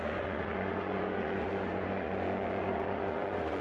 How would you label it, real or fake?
fake